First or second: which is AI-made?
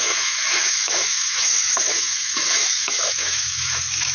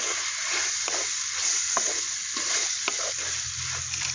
first